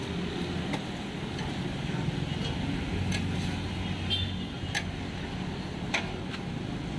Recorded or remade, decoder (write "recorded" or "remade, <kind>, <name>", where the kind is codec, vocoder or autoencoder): recorded